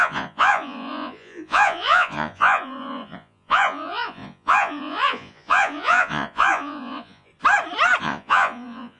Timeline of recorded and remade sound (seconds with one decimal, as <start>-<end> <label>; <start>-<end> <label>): 0.0-7.3 remade; 7.3-8.0 recorded; 8.0-9.0 remade